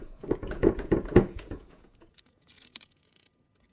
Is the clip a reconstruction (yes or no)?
yes